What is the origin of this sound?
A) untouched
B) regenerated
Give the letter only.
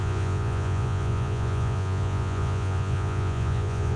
B